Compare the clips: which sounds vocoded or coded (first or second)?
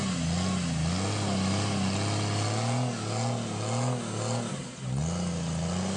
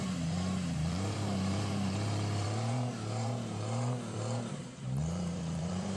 second